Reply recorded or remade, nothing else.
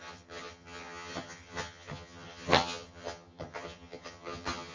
remade